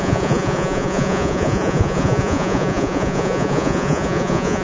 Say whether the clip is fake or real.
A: fake